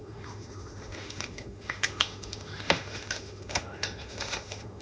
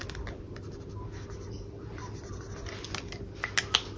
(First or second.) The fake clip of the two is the first